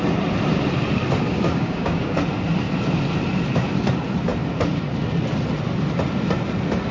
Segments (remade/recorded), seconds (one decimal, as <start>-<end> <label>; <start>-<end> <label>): 0.0-1.3 recorded; 1.3-2.2 remade; 2.2-6.9 recorded